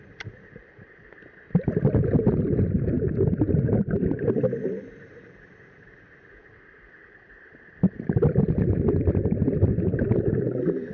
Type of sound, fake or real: real